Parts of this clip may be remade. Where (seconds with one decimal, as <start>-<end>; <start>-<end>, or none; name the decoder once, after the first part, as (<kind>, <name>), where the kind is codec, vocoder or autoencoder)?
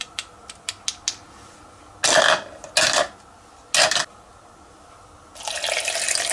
none